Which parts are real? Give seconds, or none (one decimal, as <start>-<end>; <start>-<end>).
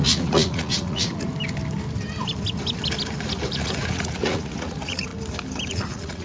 1.3-3.5; 5.1-5.7